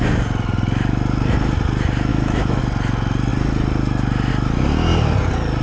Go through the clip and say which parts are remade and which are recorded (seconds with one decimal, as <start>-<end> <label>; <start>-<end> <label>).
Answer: 0.0-2.1 recorded; 2.1-2.6 remade; 2.6-5.6 recorded